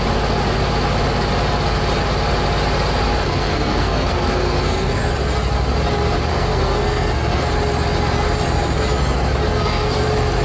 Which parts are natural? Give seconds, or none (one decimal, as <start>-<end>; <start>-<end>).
0.0-3.2; 5.0-6.3; 7.4-9.5; 10.0-10.4